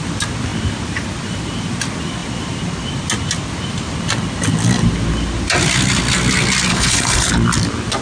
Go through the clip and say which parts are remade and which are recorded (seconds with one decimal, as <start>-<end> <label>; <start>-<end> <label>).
0.0-6.7 recorded; 6.7-7.3 remade; 7.3-8.0 recorded